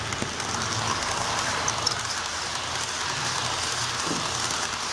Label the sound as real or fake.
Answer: real